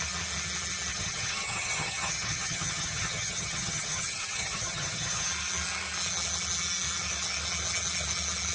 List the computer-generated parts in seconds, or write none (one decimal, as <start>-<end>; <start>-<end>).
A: 0.9-5.3